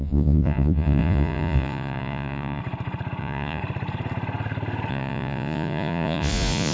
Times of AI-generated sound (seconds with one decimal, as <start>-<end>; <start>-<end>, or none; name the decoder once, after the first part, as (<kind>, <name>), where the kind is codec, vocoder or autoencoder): 0.0-2.6 (vocoder, Vocos); 3.2-3.6; 4.9-6.7